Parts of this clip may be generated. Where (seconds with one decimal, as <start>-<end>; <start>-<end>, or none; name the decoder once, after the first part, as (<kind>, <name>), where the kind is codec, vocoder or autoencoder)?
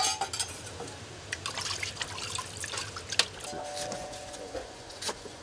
3.9-5.4 (vocoder, Vocos)